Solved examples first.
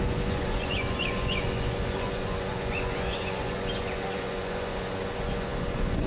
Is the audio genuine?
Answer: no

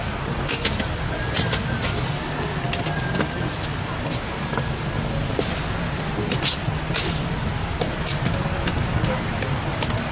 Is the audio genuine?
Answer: yes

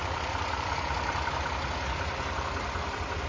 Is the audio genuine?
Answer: yes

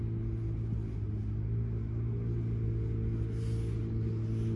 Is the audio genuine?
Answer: yes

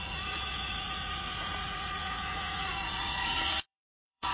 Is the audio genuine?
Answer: no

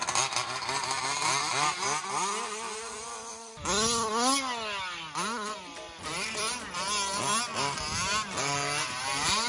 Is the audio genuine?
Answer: yes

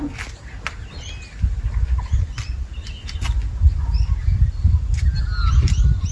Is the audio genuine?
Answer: yes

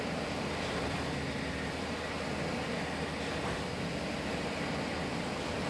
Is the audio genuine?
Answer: yes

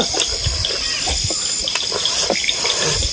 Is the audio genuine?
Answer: yes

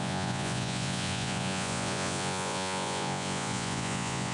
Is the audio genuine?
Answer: no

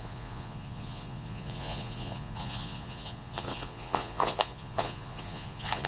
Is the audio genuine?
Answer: no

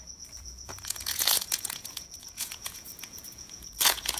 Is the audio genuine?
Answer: no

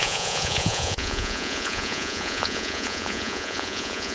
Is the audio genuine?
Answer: no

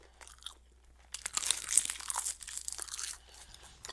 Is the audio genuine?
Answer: yes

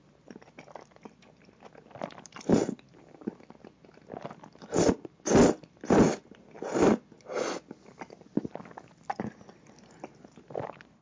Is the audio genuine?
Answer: yes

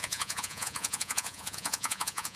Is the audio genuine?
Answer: no